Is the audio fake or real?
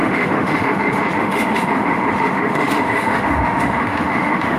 fake